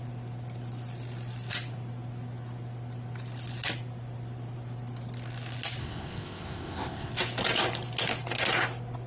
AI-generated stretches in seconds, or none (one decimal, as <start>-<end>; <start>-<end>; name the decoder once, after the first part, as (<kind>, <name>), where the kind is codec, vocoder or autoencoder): 5.8-7.1 (codec, ZipCodec)